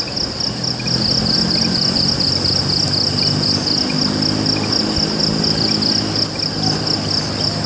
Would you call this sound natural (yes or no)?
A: yes